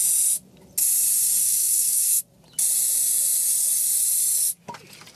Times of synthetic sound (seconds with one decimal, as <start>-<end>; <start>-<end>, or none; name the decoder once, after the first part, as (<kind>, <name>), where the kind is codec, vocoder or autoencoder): 1.4-2.2 (codec, SNAC)